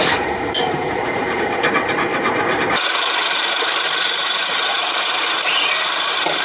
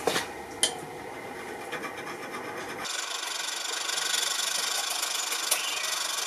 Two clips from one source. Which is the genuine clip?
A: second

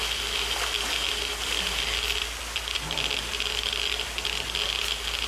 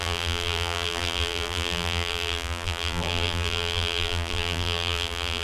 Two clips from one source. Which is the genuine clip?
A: first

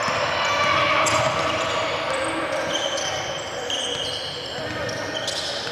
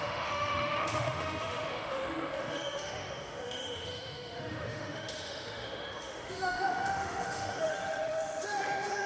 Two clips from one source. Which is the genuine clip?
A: first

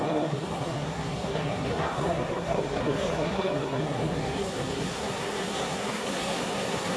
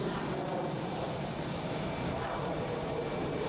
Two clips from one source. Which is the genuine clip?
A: second